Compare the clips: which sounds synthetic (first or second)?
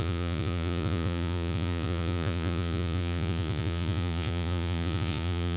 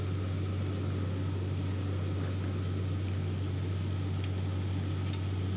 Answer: first